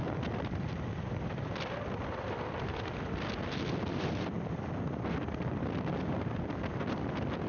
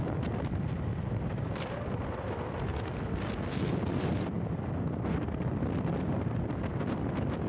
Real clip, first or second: second